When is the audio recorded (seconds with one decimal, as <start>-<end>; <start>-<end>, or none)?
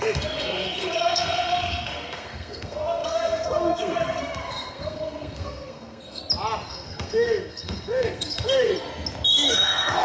6.2-6.7; 8.7-9.3